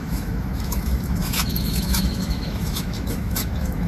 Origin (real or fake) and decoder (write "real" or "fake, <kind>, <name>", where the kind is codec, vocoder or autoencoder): fake, autoencoder, DAC-VAE